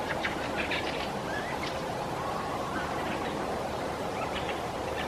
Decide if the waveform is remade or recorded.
remade